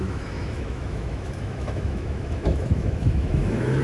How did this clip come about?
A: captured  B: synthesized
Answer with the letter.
B